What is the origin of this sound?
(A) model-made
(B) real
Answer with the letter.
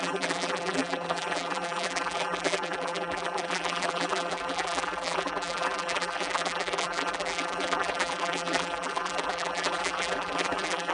A